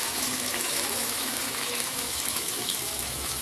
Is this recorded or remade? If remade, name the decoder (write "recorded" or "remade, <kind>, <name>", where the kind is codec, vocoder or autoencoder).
remade, autoencoder, DAC-VAE